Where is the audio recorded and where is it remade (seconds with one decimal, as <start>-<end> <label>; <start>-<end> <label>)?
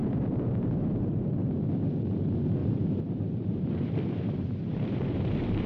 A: 0.0-1.6 remade; 1.6-2.6 recorded; 2.6-5.7 remade